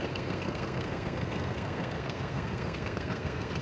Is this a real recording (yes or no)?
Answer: no